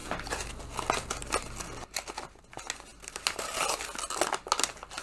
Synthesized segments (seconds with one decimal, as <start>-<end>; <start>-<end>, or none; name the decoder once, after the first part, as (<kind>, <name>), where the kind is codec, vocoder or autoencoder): none